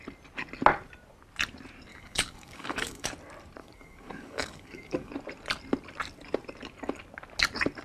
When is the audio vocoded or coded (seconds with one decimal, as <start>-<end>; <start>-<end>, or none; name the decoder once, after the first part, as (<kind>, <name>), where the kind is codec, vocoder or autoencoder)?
1.9-3.1 (codec, DAC); 3.6-5.1